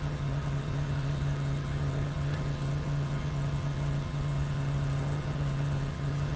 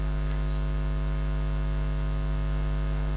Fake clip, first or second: first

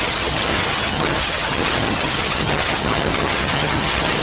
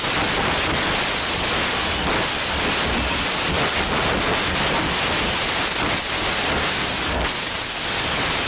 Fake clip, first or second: first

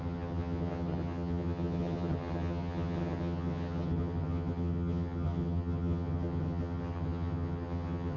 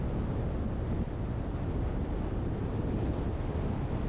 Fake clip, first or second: first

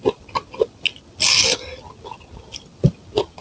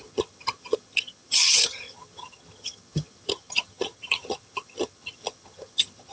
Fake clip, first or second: second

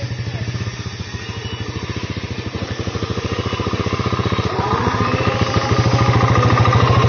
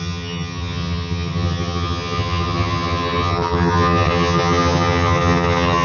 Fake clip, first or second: second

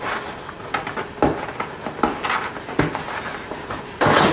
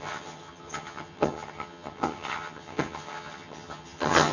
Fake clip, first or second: second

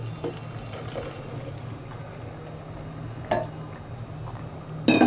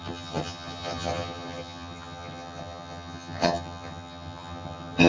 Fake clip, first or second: second